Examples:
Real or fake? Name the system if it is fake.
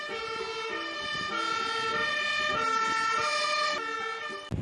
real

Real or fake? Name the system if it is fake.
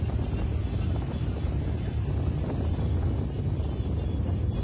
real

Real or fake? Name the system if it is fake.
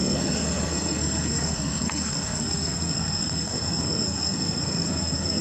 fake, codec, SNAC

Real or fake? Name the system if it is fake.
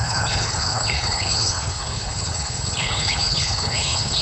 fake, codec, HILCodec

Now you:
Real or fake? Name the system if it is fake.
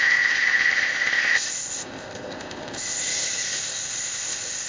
fake, codec, ZipCodec